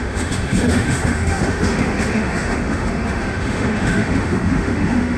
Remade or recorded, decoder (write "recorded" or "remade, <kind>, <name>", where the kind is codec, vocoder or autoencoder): remade, autoencoder, DAC-VAE